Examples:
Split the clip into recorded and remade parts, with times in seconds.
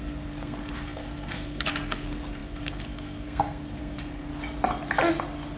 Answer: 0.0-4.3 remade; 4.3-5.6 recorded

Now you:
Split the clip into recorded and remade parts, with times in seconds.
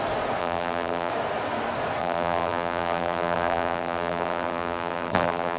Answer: 0.0-0.4 recorded; 0.4-1.1 remade; 1.1-2.0 recorded; 2.0-5.6 remade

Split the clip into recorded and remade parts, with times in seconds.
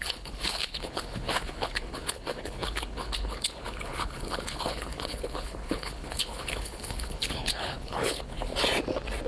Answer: 0.0-8.5 remade; 8.5-9.3 recorded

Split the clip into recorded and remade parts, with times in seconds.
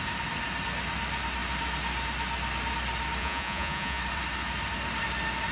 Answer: 0.0-3.2 recorded; 3.2-4.0 remade; 4.0-5.5 recorded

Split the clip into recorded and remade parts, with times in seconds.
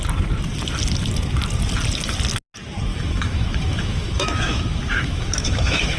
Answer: 0.0-2.9 recorded; 2.9-6.0 remade